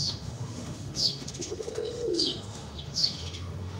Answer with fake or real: fake